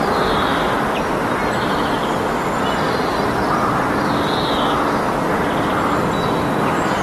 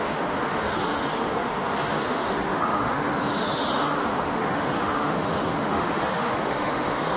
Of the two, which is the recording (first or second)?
first